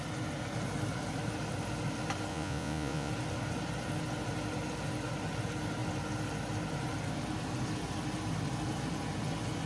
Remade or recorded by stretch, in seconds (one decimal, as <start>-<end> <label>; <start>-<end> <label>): 0.0-2.3 recorded; 2.3-3.1 remade; 3.1-9.7 recorded